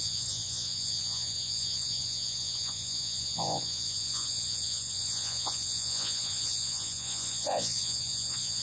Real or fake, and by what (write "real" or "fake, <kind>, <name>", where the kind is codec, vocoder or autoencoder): fake, vocoder, Vocos